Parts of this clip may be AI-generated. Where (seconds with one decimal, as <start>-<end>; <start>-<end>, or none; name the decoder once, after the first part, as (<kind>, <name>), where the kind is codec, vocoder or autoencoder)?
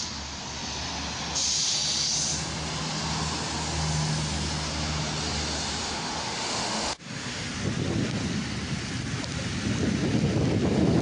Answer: 5.8-7.5 (autoencoder, DAC-VAE)